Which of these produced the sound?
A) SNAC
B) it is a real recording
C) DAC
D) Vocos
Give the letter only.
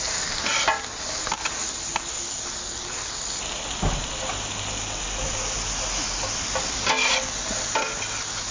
B